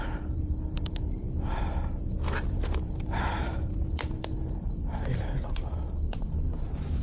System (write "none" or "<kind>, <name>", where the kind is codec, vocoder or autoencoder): vocoder, BigVGAN v2